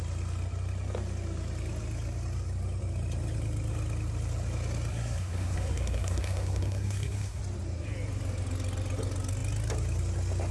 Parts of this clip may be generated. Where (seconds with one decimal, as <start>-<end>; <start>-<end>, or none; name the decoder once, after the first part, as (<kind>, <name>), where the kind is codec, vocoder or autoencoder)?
4.9-7.4 (codec, SNAC)